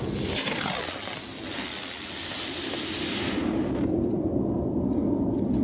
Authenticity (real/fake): real